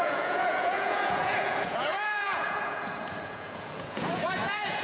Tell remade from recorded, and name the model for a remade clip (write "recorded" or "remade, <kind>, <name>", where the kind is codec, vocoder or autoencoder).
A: remade, vocoder, Vocos